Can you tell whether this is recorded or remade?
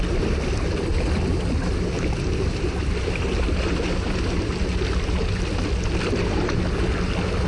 recorded